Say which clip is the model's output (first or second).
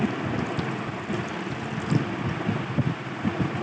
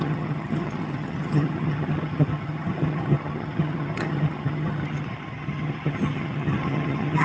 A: second